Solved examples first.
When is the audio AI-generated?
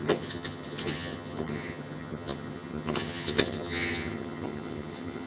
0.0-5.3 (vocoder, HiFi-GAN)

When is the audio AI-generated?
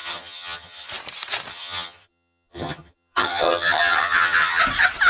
0.0-0.9 (vocoder, HiFi-GAN); 1.5-4.6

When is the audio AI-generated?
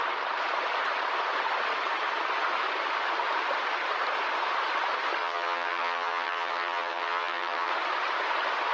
5.2-7.7 (vocoder, HiFi-GAN)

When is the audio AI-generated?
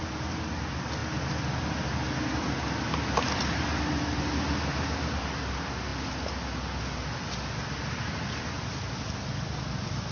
none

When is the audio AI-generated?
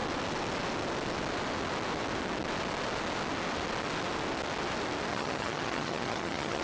5.1-6.6 (vocoder, HiFi-GAN)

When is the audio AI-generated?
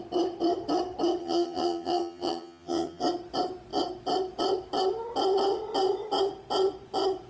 1.2-3.0 (vocoder, HiFi-GAN)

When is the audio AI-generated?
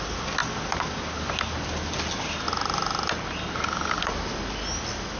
none